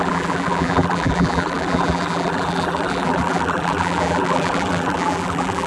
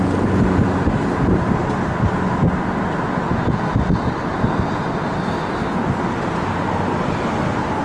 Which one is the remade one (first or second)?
first